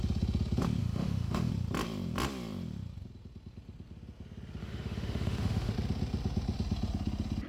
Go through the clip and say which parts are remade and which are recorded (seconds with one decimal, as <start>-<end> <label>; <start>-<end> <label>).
0.0-0.8 recorded; 0.8-1.5 remade; 1.5-4.6 recorded; 4.6-5.7 remade; 5.7-7.5 recorded

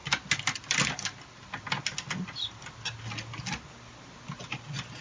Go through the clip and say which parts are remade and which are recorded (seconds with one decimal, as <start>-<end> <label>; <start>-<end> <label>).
0.0-5.0 recorded

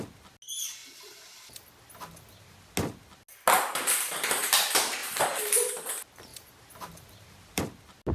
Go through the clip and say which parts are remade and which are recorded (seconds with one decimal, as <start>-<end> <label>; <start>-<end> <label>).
0.0-5.0 recorded; 5.0-5.7 remade; 5.7-6.3 recorded; 6.3-7.6 remade; 7.6-8.1 recorded

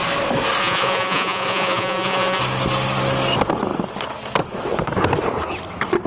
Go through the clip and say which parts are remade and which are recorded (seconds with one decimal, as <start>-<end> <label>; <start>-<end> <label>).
0.0-0.6 recorded; 0.6-2.4 remade; 2.4-6.1 recorded